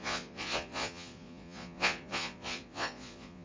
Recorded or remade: remade